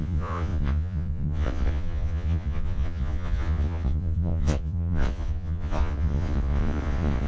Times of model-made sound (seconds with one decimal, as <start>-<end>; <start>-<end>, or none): 0.0-7.3